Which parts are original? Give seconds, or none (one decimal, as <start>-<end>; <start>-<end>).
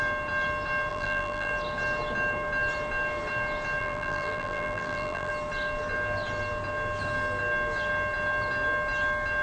0.0-0.9; 1.5-3.8; 5.3-9.4